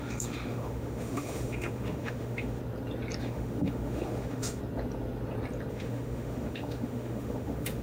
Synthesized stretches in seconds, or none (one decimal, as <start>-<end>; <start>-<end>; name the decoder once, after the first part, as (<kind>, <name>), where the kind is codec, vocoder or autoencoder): 0.0-2.6 (autoencoder, DAC-VAE); 3.2-4.6; 5.7-7.8